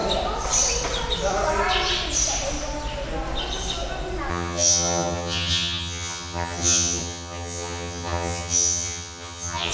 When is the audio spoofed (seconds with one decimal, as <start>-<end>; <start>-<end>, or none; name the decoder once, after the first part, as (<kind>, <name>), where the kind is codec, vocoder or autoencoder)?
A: 4.3-9.7 (vocoder, HiFi-GAN)